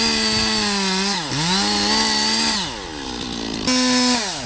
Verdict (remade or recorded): recorded